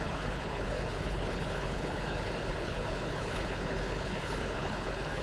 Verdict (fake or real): fake